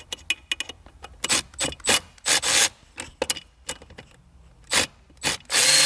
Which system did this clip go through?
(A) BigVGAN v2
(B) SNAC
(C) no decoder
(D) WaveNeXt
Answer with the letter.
C